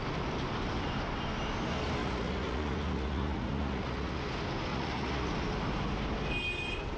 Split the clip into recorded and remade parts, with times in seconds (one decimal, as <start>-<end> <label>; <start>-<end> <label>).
0.0-2.0 recorded; 2.0-4.2 remade; 4.2-4.7 recorded; 4.7-5.3 remade; 5.3-7.0 recorded